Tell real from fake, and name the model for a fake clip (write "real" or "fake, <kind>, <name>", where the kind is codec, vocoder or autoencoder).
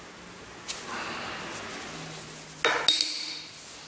real